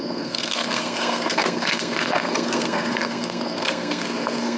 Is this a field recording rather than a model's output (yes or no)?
no